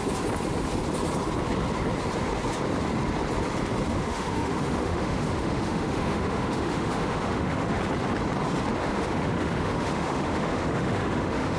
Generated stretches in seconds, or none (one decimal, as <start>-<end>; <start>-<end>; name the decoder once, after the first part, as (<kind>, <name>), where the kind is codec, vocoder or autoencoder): 3.9-7.8 (autoencoder, DAC-VAE); 8.8-11.6